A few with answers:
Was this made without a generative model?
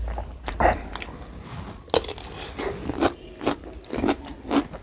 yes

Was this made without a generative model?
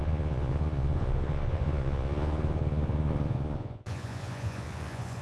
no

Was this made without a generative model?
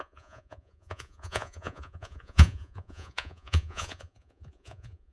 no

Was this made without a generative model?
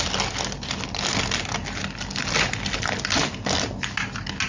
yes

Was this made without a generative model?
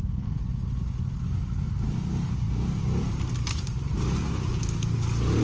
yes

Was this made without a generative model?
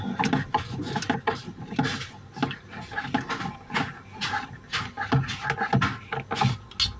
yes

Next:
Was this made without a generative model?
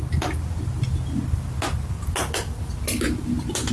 yes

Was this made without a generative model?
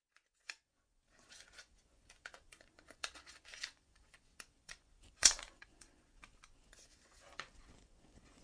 no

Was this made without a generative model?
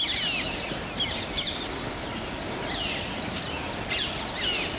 yes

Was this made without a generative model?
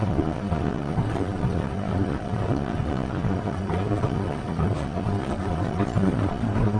no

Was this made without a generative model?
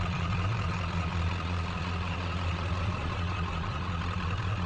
no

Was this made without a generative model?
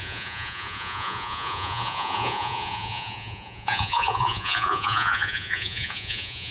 no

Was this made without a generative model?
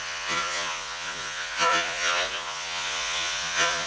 no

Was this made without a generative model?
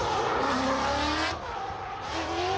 yes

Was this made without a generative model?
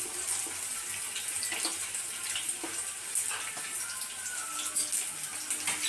yes